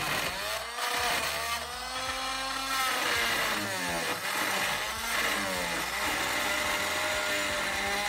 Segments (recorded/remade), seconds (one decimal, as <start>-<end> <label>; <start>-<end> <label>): 0.0-8.1 recorded